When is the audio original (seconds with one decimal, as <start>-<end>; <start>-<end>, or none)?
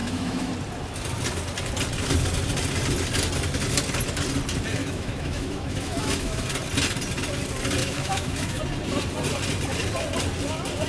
0.5-4.8; 6.5-7.8; 8.6-10.9